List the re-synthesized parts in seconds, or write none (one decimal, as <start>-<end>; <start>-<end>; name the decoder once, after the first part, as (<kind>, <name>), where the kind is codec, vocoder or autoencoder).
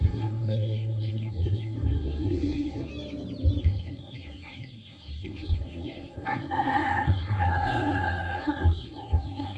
0.0-2.9 (codec, SNAC); 3.6-9.6